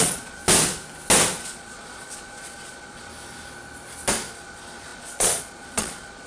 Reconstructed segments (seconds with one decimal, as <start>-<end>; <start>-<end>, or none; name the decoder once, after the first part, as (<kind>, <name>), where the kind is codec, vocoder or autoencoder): 0.0-0.4 (vocoder, Vocos); 1.4-3.1; 4.3-6.3